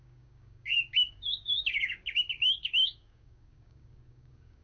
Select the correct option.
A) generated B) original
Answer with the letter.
A